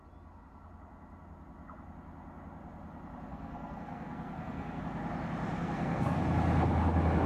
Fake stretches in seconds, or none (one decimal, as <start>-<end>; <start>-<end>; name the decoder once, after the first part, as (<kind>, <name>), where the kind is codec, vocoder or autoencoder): 3.3-4.8 (codec, SNAC); 5.6-6.2